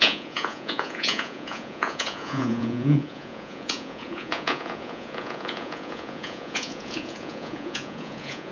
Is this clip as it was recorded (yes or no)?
no